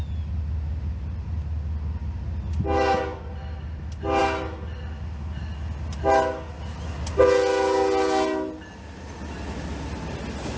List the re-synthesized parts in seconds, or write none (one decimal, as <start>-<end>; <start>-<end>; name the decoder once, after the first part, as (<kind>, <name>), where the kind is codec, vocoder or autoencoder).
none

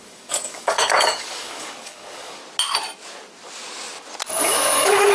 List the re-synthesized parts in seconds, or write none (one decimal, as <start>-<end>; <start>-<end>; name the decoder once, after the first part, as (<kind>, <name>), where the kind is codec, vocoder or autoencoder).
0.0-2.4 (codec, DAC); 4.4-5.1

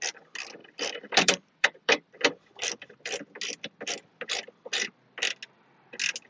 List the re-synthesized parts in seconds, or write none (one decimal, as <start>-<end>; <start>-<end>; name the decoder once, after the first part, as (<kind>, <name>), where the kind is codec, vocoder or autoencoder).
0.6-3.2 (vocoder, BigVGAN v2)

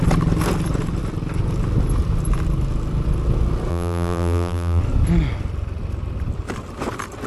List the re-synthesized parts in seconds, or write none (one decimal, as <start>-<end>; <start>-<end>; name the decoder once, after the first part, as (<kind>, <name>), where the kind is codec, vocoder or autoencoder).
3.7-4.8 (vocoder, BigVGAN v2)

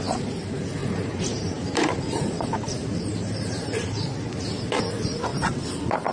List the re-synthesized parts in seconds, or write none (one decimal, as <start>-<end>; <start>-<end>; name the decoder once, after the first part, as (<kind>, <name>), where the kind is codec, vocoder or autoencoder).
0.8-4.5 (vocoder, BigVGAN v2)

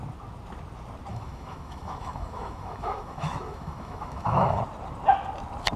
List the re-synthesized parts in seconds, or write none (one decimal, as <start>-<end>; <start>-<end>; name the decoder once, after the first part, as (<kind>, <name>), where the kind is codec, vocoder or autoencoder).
1.1-4.6 (autoencoder, DAC-VAE)

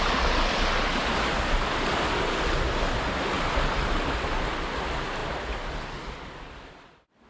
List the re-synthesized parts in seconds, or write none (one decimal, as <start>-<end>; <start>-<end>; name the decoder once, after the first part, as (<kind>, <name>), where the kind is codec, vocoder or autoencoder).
none

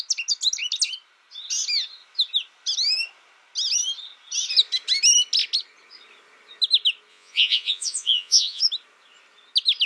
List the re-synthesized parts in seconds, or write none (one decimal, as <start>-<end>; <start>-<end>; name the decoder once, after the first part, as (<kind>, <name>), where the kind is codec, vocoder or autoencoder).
7.1-8.6 (vocoder, Vocos)